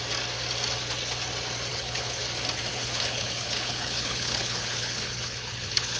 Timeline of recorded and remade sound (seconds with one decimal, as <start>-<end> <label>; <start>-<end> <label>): 0.0-1.7 recorded; 1.7-2.2 remade; 2.2-2.7 recorded; 2.7-6.0 remade